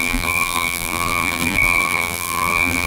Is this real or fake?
fake